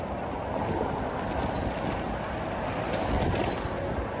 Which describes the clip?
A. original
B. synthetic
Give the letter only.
A